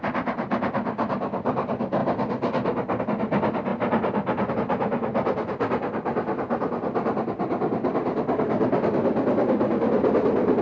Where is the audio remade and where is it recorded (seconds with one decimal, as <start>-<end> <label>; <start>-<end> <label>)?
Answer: 0.0-10.6 recorded